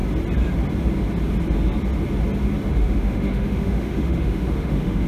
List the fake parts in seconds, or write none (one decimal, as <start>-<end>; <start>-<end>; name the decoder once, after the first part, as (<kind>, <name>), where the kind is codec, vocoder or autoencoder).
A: 2.7-5.1 (autoencoder, DAC-VAE)